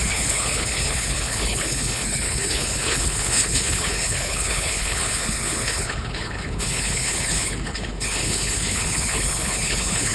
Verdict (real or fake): fake